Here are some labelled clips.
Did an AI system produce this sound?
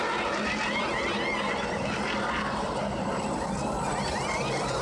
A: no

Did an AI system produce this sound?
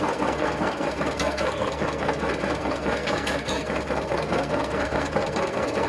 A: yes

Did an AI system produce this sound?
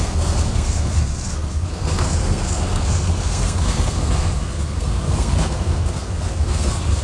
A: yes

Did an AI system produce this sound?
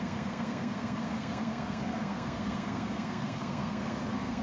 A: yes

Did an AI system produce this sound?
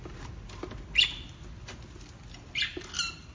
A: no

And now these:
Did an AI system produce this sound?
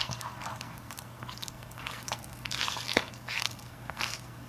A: yes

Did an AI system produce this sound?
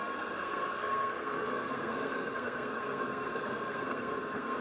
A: yes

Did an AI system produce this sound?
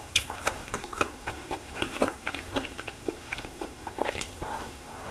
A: yes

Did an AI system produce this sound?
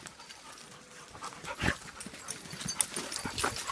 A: no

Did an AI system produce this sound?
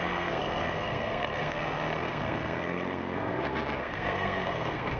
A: yes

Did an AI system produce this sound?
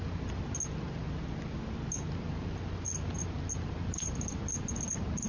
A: no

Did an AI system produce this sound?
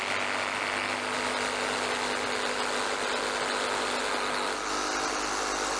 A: no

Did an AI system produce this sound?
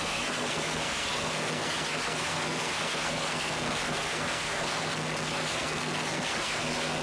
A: yes